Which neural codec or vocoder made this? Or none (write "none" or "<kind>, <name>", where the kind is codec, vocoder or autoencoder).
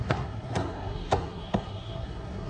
codec, SNAC